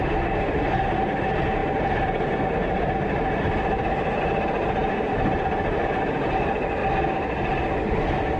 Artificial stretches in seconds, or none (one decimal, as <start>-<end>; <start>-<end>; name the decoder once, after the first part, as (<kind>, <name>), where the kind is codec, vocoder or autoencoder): 0.0-6.8 (vocoder, BigVGAN v2); 8.0-8.4